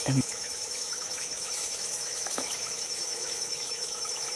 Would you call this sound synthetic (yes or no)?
yes